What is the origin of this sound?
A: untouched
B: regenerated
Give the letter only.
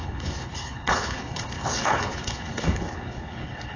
B